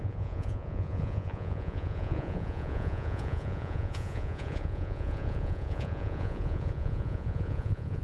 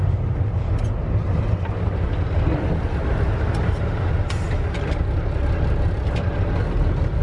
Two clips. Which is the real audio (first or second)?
second